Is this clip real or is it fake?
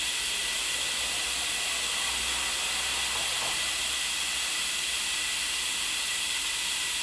real